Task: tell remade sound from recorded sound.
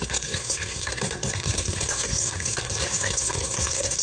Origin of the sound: remade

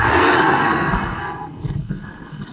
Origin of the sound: remade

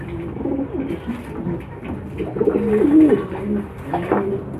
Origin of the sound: recorded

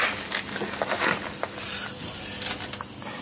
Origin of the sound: recorded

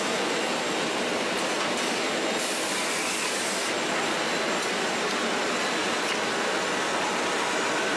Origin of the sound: recorded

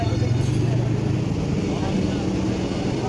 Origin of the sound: recorded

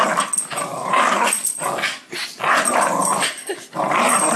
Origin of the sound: recorded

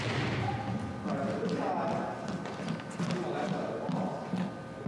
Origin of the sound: recorded